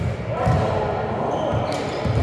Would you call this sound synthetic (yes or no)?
no